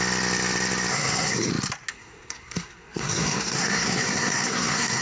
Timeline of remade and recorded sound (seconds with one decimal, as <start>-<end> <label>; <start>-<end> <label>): 0.0-0.9 recorded; 0.9-1.5 remade; 1.5-1.9 recorded; 1.9-5.0 remade